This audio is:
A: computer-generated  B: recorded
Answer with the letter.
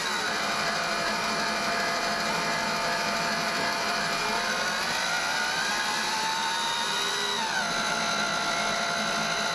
B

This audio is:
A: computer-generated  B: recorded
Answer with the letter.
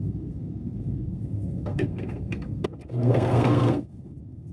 A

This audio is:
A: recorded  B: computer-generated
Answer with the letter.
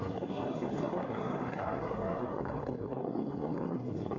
B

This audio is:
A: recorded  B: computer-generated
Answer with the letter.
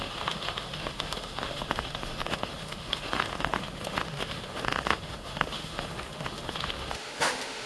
B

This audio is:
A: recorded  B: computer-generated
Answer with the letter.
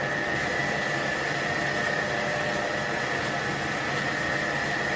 A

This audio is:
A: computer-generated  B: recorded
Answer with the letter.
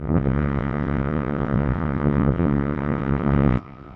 A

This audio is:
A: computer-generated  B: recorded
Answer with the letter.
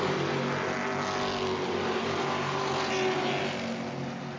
B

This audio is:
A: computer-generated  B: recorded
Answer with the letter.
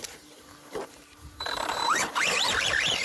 A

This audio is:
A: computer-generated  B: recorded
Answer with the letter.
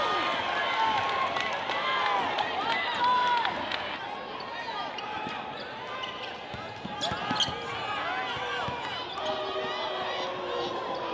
B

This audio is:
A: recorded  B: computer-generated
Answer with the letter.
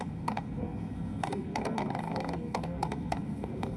B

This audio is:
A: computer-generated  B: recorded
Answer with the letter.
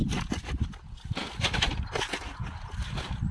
B